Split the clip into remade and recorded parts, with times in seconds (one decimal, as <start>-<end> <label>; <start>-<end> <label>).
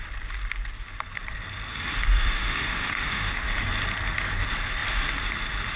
0.0-1.7 recorded; 1.7-3.7 remade; 3.7-5.8 recorded